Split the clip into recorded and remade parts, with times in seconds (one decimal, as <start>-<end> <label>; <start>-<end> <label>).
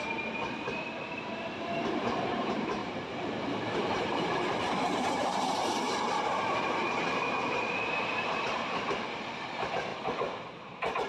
0.0-11.1 remade